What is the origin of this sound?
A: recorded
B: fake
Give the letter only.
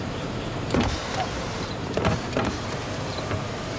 B